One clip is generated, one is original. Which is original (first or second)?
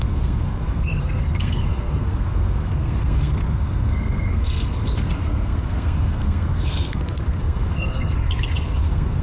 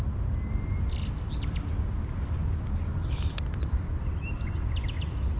second